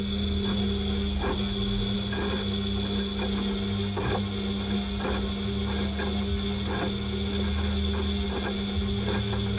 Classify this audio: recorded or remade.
recorded